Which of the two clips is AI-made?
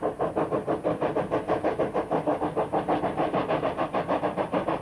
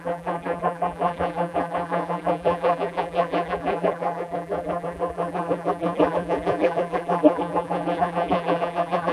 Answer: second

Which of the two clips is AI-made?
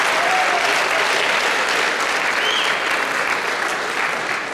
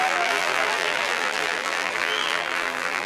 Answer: second